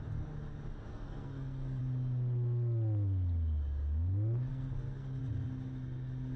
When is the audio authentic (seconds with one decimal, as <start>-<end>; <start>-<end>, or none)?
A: 0.0-0.9; 1.8-4.5; 5.2-6.4